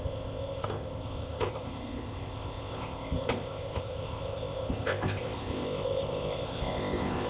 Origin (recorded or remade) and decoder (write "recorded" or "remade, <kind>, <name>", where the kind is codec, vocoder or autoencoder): remade, codec, ZipCodec